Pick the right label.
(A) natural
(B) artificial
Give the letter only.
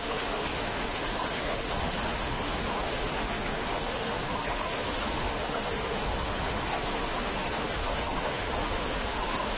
B